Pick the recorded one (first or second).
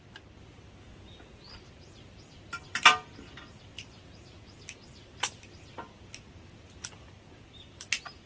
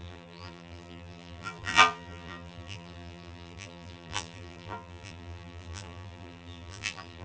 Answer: first